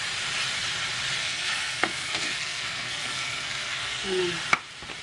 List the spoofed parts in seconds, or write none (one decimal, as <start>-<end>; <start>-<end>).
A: 1.2-4.2